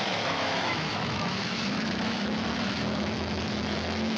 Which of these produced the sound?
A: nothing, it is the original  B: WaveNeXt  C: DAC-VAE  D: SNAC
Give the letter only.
C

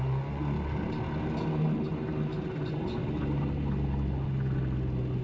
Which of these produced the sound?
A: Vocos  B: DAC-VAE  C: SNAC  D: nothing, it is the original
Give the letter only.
D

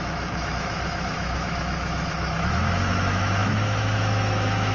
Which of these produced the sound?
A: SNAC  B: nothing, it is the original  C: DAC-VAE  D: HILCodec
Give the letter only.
C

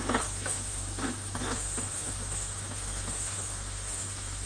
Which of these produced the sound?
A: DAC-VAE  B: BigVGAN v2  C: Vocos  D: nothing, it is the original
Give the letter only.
A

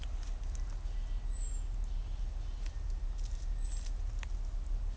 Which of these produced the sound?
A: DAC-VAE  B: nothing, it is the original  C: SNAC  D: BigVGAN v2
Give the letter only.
B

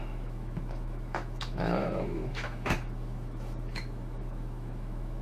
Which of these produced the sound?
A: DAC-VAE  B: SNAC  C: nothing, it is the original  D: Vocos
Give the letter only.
A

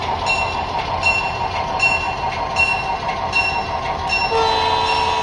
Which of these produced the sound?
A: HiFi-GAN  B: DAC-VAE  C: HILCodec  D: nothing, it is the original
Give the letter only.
D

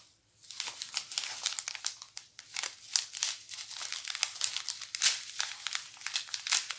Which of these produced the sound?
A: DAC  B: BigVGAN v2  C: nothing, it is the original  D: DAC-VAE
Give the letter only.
C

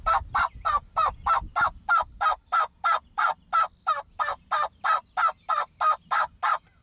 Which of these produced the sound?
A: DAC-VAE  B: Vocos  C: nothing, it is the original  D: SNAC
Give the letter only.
C